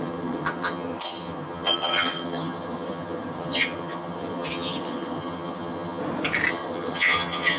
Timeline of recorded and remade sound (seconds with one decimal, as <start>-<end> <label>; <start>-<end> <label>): 0.0-6.0 remade; 6.0-6.5 recorded; 6.5-7.6 remade